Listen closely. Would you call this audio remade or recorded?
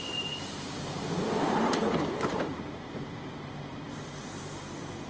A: remade